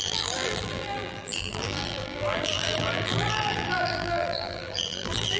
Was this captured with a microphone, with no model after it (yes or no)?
no